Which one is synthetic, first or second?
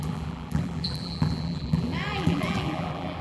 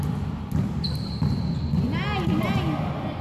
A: first